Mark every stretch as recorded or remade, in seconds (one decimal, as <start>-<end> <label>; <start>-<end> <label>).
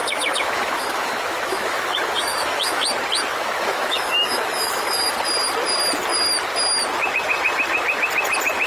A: 0.0-2.8 remade; 2.8-3.3 recorded; 3.3-5.1 remade; 5.1-8.7 recorded